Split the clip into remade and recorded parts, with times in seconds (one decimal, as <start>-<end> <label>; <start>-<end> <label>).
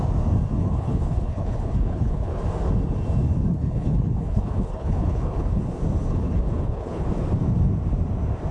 0.0-0.6 recorded; 0.6-2.4 remade; 2.4-3.5 recorded; 3.5-5.6 remade; 5.6-6.1 recorded; 6.1-7.1 remade; 7.1-8.5 recorded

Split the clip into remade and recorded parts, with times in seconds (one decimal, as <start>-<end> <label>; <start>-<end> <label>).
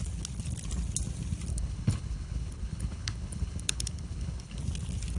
0.0-1.5 recorded; 1.5-4.6 remade; 4.6-5.2 recorded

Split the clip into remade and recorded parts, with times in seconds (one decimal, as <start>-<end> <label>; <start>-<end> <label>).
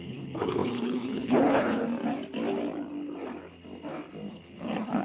0.0-1.8 remade; 1.8-4.3 recorded; 4.3-5.0 remade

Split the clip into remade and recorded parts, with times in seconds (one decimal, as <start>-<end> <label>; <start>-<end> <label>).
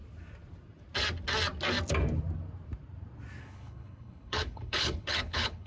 0.0-3.4 recorded; 3.4-5.7 remade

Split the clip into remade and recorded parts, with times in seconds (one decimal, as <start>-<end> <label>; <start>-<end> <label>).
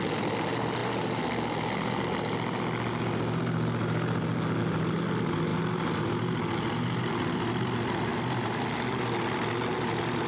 0.0-10.3 recorded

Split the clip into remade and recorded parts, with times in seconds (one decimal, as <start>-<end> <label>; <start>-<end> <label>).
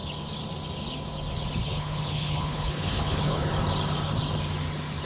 0.0-1.6 recorded; 1.6-3.5 remade; 3.5-5.1 recorded